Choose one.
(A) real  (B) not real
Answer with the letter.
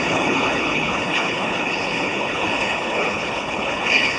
B